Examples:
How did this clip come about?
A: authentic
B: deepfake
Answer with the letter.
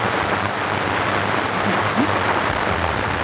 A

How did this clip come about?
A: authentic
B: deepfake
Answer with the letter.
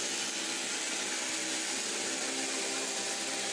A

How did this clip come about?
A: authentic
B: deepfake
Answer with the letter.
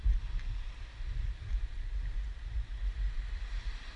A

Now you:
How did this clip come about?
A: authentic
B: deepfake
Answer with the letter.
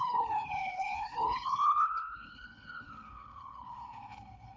B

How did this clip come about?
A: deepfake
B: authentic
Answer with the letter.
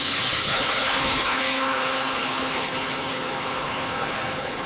A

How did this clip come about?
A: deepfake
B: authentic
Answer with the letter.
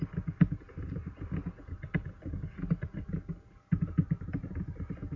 B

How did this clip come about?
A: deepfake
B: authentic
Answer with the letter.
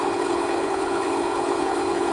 A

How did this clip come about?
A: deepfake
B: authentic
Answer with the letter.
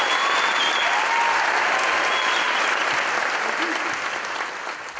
B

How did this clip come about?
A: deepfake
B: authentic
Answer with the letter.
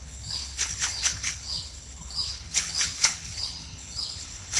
A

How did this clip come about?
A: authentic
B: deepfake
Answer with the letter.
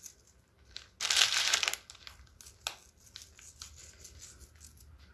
A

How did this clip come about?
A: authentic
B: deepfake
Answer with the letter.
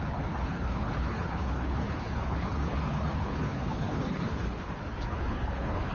B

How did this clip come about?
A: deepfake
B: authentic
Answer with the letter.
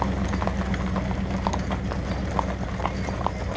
B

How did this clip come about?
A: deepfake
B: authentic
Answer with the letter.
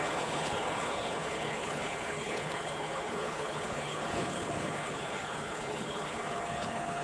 A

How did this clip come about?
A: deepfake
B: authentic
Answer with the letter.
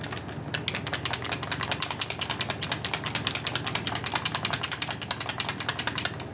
B